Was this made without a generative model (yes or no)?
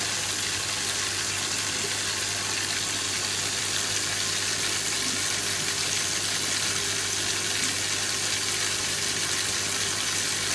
yes